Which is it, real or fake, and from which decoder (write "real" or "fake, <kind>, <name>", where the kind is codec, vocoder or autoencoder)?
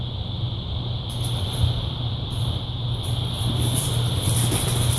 real